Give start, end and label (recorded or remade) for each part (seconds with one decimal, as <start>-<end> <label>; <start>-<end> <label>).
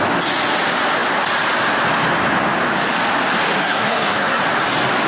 0.0-3.6 recorded; 3.6-4.4 remade; 4.4-5.1 recorded